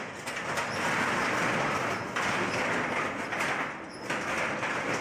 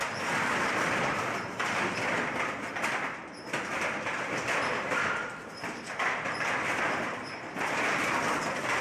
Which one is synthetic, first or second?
second